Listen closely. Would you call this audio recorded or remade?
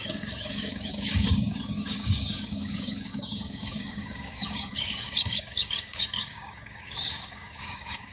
remade